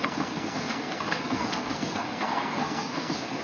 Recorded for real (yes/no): no